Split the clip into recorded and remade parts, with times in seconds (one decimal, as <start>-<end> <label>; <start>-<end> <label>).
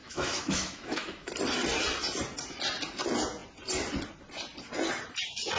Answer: 0.0-1.3 remade; 1.3-5.6 recorded